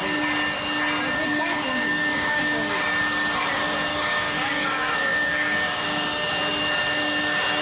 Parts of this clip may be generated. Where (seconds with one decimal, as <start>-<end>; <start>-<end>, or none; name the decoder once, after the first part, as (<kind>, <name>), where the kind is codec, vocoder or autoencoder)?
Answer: 1.3-2.8 (codec, DAC); 3.9-6.3